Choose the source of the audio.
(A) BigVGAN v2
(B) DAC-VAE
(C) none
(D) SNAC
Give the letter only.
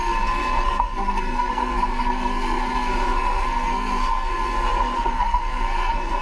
D